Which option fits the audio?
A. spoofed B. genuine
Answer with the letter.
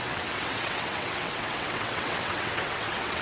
A